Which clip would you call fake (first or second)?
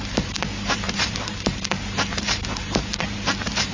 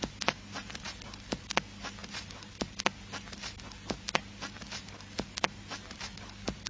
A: first